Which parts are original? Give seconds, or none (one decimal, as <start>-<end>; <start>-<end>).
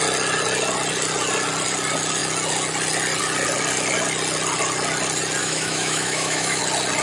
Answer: 0.0-5.4; 6.6-7.0